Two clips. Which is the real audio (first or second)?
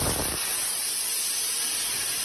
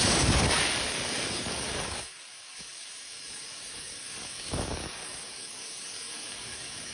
first